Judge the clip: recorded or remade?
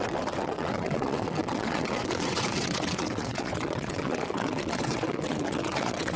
remade